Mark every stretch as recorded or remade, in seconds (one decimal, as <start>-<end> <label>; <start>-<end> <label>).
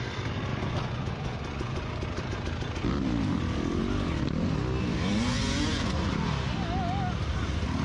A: 0.0-0.5 recorded; 0.5-1.9 remade; 1.9-5.1 recorded; 5.1-6.1 remade; 6.1-7.8 recorded